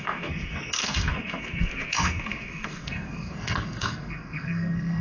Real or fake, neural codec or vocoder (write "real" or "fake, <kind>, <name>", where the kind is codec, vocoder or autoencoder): fake, codec, SNAC